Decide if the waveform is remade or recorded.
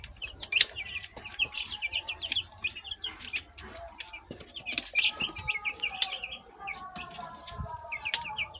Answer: remade